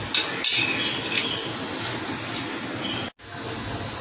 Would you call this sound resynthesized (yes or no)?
no